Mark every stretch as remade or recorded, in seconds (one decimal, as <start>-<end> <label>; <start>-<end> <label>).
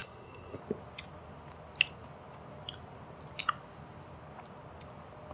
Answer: 0.0-0.6 remade; 0.6-5.3 recorded